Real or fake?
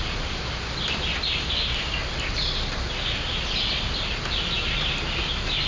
real